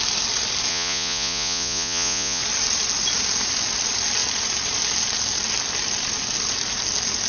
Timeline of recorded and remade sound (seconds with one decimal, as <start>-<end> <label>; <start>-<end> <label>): 0.0-0.7 recorded; 0.7-2.4 remade; 2.4-7.3 recorded